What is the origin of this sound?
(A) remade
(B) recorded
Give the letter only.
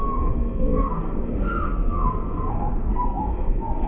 A